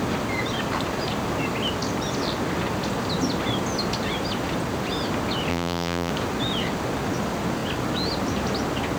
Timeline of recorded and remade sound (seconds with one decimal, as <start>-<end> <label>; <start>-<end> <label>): 0.0-5.5 recorded; 5.5-6.1 remade; 6.1-9.0 recorded

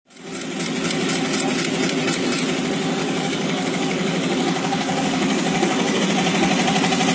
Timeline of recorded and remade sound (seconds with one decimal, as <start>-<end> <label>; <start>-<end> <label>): 0.0-3.0 recorded; 3.0-6.0 remade; 6.0-7.1 recorded

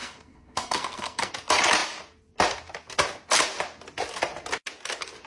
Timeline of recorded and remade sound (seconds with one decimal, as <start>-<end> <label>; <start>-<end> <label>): 0.0-1.3 remade; 1.3-5.3 recorded

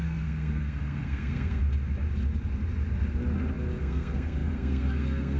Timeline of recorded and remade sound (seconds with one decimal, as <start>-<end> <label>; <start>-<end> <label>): 0.0-1.6 remade; 1.6-3.8 recorded; 3.8-5.4 remade

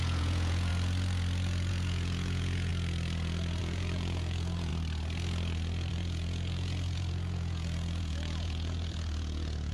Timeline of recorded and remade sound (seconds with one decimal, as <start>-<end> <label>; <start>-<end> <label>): 0.0-0.7 remade; 0.7-1.7 recorded; 1.7-2.7 remade; 2.7-3.6 recorded; 3.6-4.7 remade; 4.7-5.9 recorded; 5.9-9.7 remade

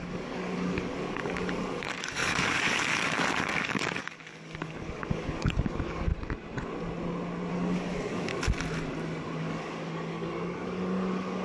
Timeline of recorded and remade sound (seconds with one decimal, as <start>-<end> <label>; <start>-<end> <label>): 0.0-6.1 remade; 6.1-7.5 recorded; 7.5-8.3 remade; 8.3-9.4 recorded; 9.4-11.4 remade

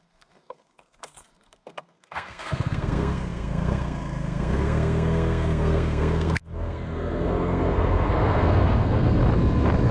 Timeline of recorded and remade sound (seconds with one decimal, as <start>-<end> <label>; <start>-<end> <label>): 0.0-9.2 remade; 9.2-9.9 recorded

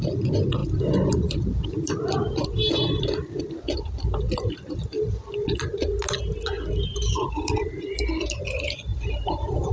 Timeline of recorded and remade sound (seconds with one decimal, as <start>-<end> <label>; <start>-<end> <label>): 0.0-0.6 recorded; 0.6-3.4 remade; 3.4-8.9 recorded; 8.9-9.7 remade